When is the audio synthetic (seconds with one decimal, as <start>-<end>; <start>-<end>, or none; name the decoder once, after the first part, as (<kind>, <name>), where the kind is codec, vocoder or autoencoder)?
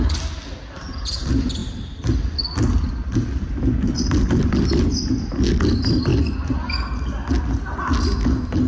none